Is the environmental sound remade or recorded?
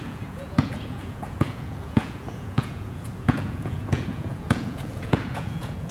remade